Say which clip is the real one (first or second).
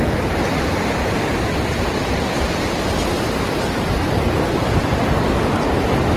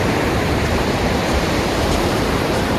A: first